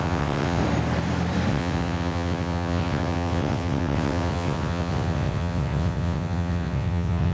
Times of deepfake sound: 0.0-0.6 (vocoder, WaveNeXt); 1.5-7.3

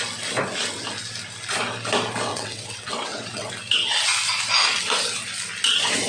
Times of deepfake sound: 2.3-3.5 (vocoder, WaveNeXt)